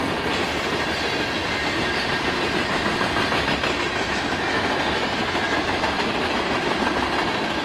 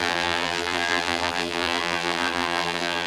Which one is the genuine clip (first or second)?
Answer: first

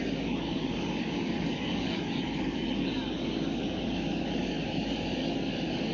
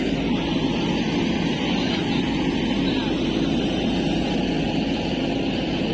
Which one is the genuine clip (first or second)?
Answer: second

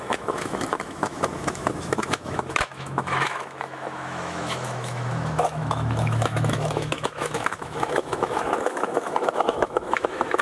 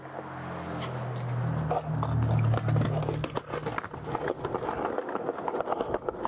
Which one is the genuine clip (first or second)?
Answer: second